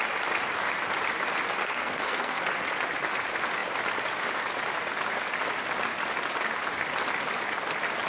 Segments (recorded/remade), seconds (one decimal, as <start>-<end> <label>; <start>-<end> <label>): 0.0-1.6 recorded; 1.6-2.4 remade; 2.4-8.1 recorded